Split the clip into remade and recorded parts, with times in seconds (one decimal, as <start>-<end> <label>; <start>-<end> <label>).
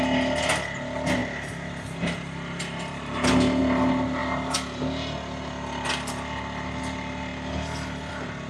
0.0-8.5 recorded